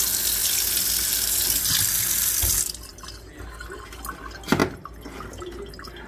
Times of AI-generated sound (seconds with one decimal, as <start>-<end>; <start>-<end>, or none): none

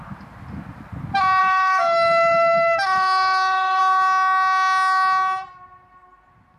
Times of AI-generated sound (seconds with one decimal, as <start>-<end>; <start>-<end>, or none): 1.4-3.8

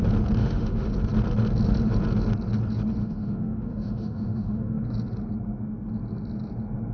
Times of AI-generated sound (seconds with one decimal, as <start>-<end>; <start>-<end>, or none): 0.4-0.9; 3.0-4.8